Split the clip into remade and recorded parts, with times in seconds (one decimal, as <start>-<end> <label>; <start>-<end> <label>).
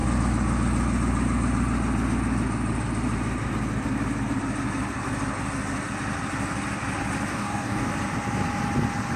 0.0-7.3 recorded; 7.3-7.9 remade; 7.9-9.2 recorded